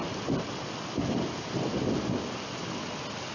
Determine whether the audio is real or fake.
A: real